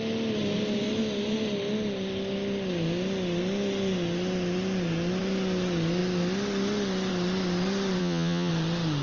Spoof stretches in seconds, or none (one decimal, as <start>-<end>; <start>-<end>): 8.0-8.5

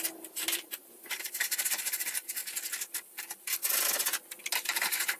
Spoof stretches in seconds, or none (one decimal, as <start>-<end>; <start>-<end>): 0.0-2.4; 3.0-3.6; 4.4-5.2